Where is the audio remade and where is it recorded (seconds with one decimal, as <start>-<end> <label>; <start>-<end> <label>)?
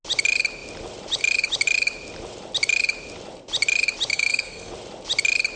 0.0-4.1 recorded; 4.1-4.7 remade; 4.7-5.6 recorded